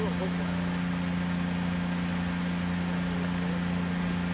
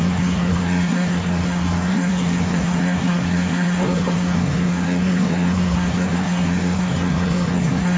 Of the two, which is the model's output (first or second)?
second